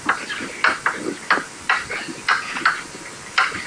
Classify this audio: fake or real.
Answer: real